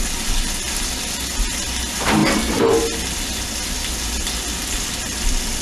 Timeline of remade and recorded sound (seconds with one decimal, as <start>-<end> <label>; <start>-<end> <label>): 0.0-5.6 recorded